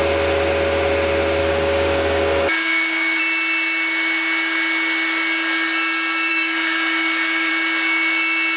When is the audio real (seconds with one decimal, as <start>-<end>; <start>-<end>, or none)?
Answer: 0.0-1.4; 3.2-6.3; 7.5-8.6